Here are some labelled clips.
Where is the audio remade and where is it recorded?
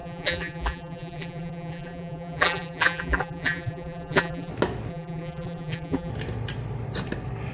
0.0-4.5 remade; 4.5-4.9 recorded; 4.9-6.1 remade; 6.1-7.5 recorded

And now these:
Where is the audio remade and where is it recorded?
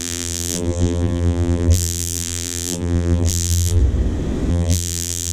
0.0-3.8 remade; 3.8-4.5 recorded; 4.5-5.3 remade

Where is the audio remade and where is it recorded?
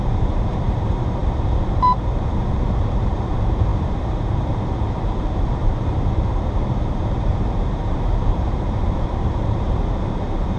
0.0-10.6 remade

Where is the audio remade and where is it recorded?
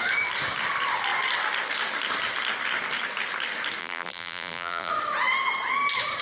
0.0-3.8 recorded; 3.8-4.9 remade; 4.9-6.2 recorded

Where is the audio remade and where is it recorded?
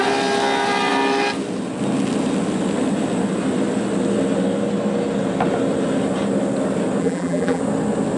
0.0-7.0 recorded; 7.0-7.6 remade; 7.6-8.2 recorded